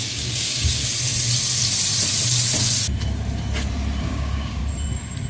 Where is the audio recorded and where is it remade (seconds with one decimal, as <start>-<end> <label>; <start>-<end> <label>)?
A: 0.0-0.8 remade; 0.8-4.0 recorded; 4.0-4.6 remade; 4.6-5.3 recorded